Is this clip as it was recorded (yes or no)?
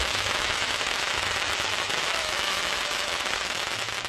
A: no